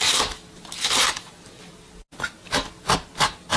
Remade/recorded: recorded